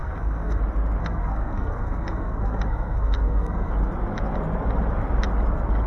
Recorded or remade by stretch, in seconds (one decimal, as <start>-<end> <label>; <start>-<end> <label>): 0.0-0.6 remade; 0.6-1.0 recorded; 1.0-3.7 remade; 3.7-5.9 recorded